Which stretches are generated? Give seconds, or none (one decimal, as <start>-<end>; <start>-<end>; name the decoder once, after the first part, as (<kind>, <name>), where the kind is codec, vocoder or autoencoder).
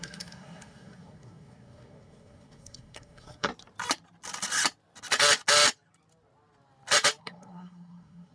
0.0-3.5 (codec, SNAC); 7.2-8.3